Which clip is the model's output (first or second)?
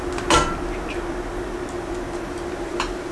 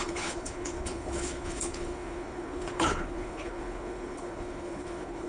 second